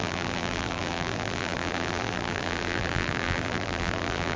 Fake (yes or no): yes